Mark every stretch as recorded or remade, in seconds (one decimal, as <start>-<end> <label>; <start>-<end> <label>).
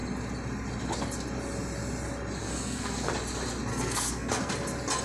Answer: 0.0-2.4 recorded; 2.4-3.1 remade; 3.1-3.7 recorded; 3.7-4.5 remade; 4.5-5.0 recorded